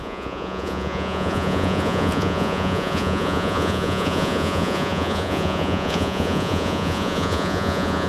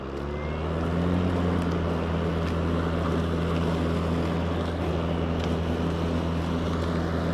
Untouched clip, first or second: second